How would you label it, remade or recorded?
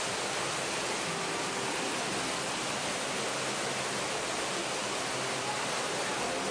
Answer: recorded